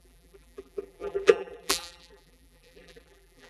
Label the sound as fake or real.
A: fake